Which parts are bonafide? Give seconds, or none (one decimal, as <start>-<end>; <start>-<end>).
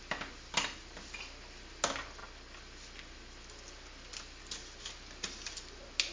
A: 0.0-6.1